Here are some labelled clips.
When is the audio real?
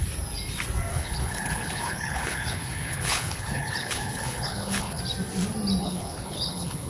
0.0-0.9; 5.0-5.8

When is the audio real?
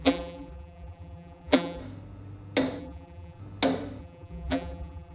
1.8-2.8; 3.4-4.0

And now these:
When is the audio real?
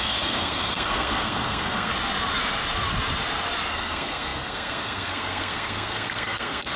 1.9-3.7